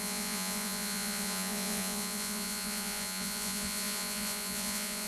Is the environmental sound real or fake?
fake